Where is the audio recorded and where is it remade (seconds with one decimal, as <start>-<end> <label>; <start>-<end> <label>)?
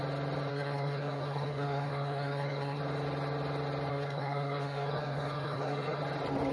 0.0-0.5 recorded; 0.5-2.8 remade; 2.8-3.9 recorded; 3.9-6.0 remade; 6.0-6.5 recorded